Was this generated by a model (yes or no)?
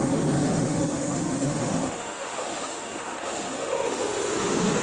yes